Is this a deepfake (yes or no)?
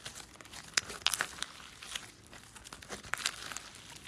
no